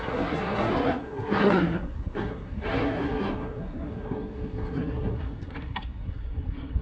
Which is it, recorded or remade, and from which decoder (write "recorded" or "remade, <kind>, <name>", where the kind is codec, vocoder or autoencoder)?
remade, codec, SNAC